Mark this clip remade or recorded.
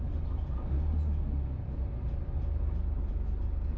recorded